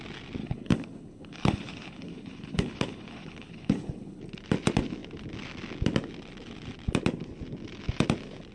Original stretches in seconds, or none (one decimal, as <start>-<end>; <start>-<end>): 0.0-0.4; 4.2-8.5